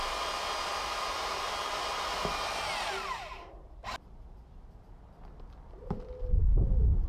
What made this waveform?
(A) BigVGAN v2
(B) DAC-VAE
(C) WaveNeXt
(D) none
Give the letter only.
D